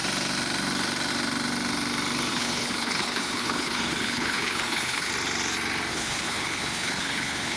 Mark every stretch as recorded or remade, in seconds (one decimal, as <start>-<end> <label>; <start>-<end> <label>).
0.0-2.3 recorded; 2.3-5.1 remade; 5.1-5.9 recorded; 5.9-7.6 remade